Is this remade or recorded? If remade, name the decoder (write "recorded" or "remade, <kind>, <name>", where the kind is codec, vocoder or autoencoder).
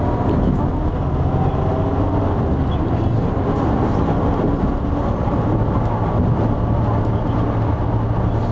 recorded